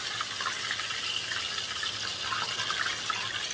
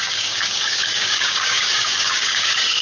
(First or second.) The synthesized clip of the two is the second